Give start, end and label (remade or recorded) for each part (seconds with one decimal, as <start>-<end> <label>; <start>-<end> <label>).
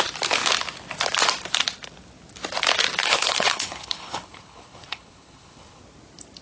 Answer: 0.0-3.0 recorded; 3.0-5.8 remade; 5.8-6.4 recorded